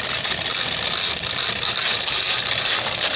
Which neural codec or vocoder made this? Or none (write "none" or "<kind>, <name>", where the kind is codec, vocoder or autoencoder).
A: none